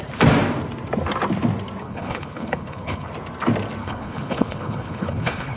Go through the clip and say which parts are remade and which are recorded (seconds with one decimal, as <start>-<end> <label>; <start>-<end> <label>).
0.0-1.8 recorded; 1.8-3.1 remade; 3.1-3.8 recorded; 3.8-5.6 remade